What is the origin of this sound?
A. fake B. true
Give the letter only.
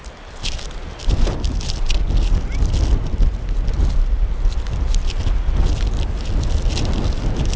B